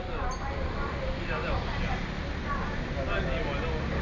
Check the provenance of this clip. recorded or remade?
recorded